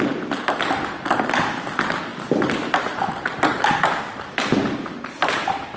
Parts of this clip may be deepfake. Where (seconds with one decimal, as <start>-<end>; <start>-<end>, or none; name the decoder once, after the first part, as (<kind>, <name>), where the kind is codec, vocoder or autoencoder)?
none